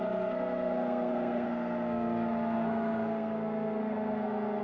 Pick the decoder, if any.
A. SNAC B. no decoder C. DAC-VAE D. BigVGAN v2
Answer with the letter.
A